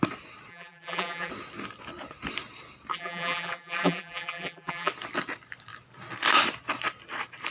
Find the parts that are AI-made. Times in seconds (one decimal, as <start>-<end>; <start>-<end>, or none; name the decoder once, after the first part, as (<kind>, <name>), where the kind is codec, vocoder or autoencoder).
0.5-1.3 (vocoder, BigVGAN v2); 2.9-4.9